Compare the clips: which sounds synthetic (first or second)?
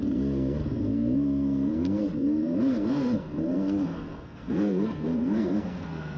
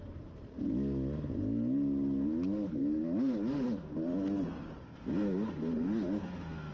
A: first